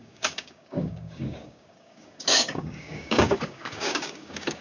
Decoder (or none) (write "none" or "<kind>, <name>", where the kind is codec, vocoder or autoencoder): codec, DAC